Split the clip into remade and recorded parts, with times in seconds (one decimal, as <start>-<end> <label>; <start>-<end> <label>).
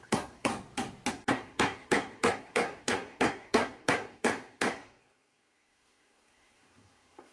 0.0-0.5 remade; 0.5-1.1 recorded; 1.1-7.3 remade